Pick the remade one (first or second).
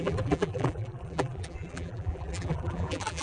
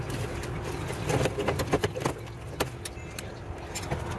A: first